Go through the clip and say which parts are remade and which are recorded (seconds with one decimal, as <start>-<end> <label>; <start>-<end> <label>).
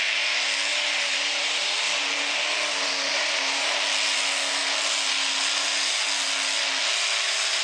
0.0-0.7 recorded; 0.7-1.6 remade; 1.6-3.1 recorded; 3.1-3.8 remade; 3.8-7.6 recorded